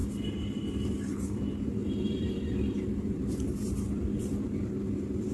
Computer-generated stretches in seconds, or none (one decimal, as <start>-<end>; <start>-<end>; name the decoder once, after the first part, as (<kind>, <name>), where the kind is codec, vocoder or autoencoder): 0.0-0.7 (vocoder, BigVGAN v2); 1.8-5.3